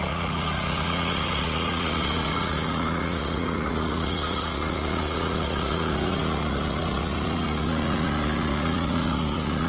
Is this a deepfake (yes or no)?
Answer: yes